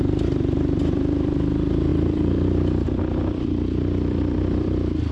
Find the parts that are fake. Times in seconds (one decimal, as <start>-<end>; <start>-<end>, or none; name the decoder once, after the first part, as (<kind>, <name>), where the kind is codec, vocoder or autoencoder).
0.0-5.1 (vocoder, BigVGAN v2)

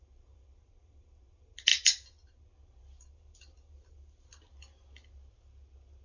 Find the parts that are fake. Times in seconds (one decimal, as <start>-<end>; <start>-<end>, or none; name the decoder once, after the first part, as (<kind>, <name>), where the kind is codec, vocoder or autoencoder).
none